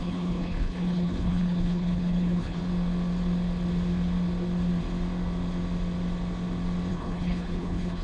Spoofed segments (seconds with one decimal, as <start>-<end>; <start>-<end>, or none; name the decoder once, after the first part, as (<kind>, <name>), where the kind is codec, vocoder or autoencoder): 0.0-2.6 (codec, HILCodec); 6.9-8.0